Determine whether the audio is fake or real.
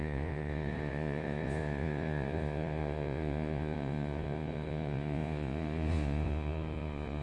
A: fake